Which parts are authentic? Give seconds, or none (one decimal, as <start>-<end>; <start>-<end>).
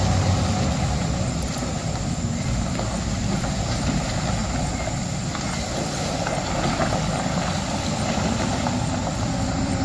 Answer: 0.0-0.9; 4.4-9.1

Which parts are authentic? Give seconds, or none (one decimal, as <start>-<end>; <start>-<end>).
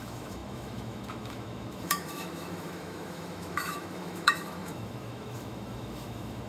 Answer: none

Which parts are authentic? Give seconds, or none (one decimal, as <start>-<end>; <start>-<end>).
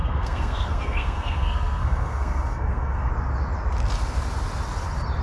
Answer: 3.1-5.2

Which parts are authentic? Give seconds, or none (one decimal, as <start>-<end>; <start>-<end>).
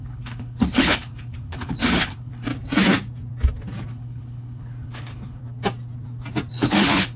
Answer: 2.5-3.9; 5.4-6.5